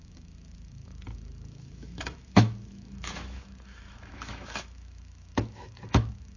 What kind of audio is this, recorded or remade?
remade